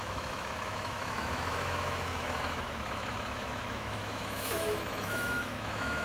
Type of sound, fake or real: fake